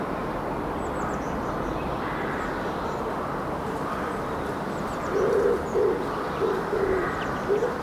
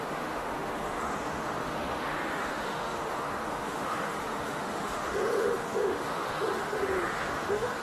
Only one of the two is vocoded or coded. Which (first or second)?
second